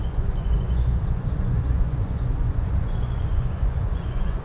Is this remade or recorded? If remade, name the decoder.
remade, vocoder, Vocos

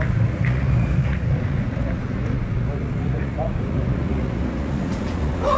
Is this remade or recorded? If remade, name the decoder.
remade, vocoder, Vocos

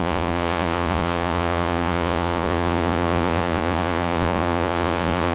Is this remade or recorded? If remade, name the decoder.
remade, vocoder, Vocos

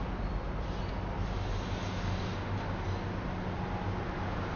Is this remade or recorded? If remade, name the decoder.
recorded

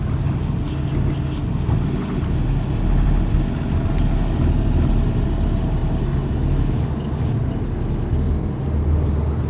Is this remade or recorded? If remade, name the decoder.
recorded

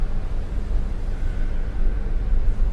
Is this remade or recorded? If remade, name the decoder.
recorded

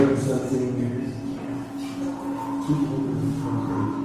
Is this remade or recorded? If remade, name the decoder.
recorded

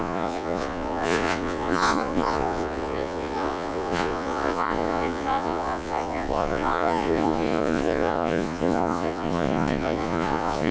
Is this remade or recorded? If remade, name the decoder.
remade, vocoder, Vocos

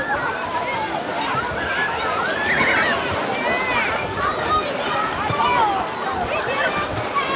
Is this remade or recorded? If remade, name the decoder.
recorded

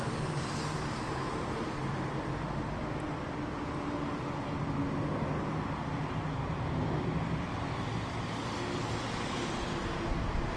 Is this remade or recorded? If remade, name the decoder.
recorded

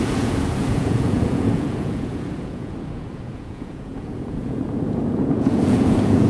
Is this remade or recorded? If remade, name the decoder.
remade, vocoder, Vocos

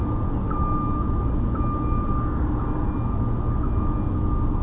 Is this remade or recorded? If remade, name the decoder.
recorded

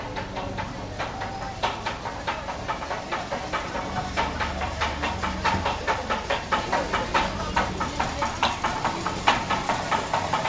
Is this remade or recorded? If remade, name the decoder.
recorded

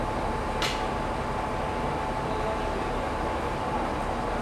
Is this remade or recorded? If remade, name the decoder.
recorded